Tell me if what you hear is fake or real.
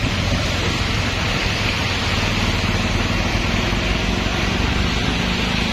real